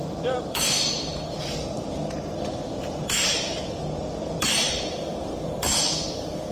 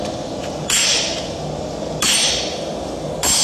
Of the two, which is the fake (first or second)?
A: first